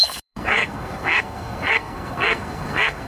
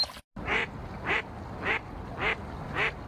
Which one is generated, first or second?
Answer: first